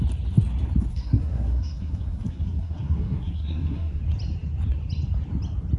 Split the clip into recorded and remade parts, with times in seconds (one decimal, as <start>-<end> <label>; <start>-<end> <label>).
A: 0.0-0.9 recorded; 0.9-4.0 remade; 4.0-5.8 recorded

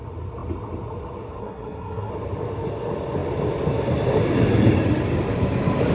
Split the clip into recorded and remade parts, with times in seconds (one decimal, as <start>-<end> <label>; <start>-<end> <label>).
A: 0.0-1.4 recorded; 1.4-2.1 remade; 2.1-5.9 recorded